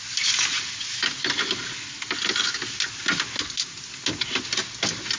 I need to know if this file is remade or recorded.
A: recorded